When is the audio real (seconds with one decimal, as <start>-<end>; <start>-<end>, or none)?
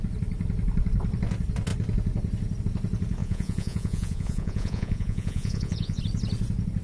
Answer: 0.0-3.2; 6.0-6.8